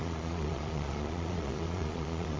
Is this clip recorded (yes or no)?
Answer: no